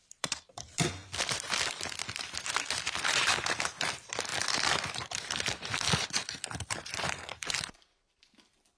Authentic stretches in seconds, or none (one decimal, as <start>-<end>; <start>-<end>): none